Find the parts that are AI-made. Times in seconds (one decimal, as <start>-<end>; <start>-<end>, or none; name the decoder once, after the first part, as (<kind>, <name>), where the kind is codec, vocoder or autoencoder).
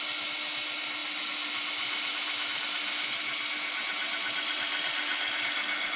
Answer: none